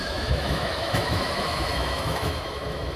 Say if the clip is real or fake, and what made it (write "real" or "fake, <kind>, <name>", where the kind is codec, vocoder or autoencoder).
fake, autoencoder, DAC-VAE